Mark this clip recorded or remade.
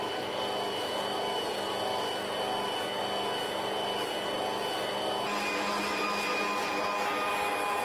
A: recorded